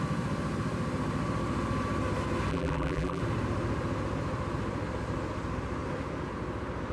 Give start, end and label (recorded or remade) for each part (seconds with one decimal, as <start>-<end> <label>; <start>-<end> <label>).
0.0-2.5 recorded; 2.5-3.2 remade; 3.2-6.9 recorded